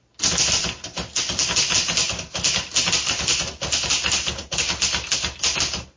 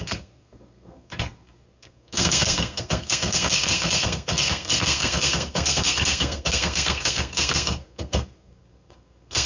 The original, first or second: first